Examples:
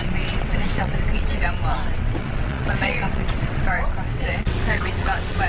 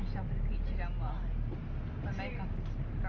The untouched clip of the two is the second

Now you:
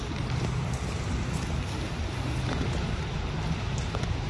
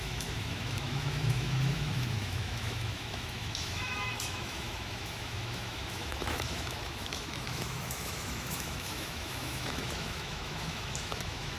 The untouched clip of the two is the first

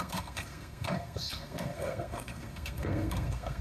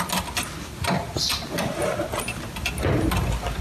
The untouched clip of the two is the second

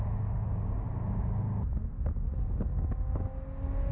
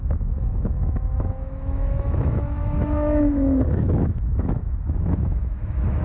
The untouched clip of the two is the first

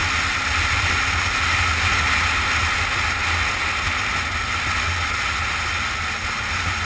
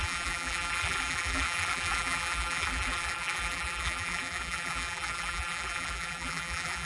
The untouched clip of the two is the first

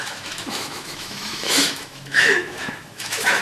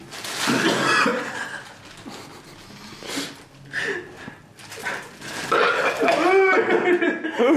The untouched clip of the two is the second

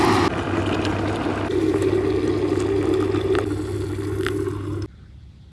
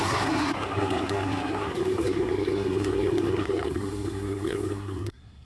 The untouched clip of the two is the first